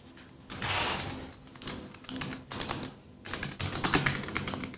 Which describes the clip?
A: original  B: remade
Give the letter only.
A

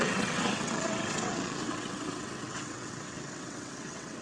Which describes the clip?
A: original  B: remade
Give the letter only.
B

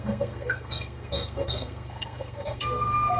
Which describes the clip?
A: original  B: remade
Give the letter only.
B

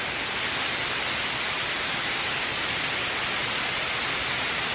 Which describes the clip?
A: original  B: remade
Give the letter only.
A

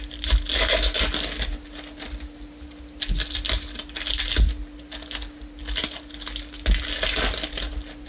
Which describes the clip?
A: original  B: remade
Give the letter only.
A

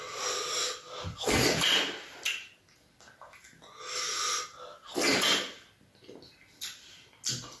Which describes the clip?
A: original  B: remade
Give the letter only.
A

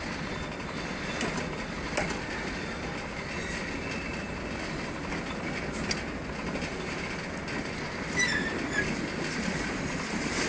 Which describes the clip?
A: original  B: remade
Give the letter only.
A